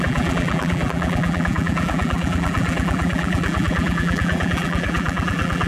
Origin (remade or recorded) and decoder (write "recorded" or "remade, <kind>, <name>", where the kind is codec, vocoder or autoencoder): remade, vocoder, BigVGAN v2